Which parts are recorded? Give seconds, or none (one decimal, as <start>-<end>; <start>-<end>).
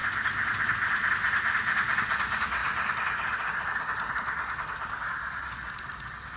0.0-6.4